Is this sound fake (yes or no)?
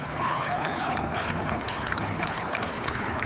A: yes